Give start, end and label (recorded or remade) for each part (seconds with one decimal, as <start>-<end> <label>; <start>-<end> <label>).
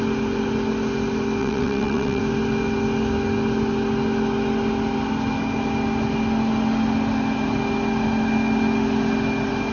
0.0-1.4 recorded; 1.4-2.2 remade; 2.2-9.7 recorded